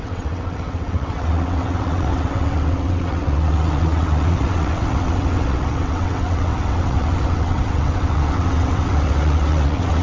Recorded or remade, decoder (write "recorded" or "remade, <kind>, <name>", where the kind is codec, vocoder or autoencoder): remade, vocoder, WaveNeXt